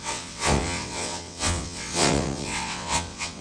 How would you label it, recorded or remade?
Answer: remade